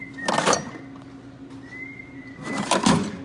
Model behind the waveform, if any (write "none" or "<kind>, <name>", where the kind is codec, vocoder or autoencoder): none